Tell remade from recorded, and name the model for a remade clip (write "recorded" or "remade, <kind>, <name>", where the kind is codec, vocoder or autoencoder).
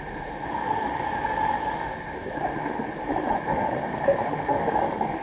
remade, autoencoder, DAC-VAE